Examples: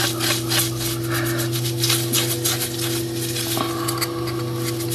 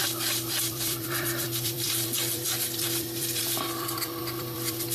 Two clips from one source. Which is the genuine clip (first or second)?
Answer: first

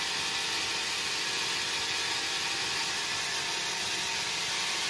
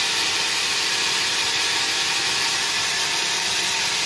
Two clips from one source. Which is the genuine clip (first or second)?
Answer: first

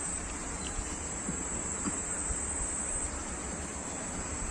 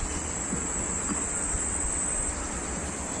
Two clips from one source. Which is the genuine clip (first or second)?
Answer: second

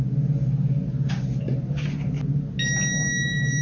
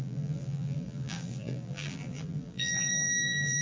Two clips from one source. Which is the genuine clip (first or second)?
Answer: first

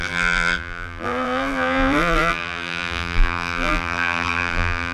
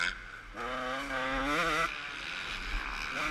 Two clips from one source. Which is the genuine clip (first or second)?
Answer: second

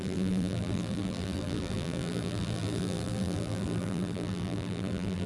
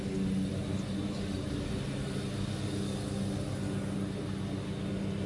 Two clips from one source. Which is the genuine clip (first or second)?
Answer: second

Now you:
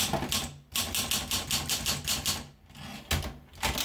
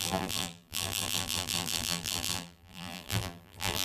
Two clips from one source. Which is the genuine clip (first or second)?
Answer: first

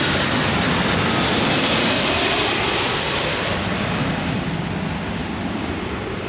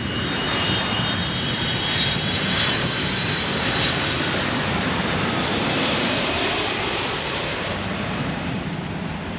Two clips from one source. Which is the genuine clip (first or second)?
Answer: first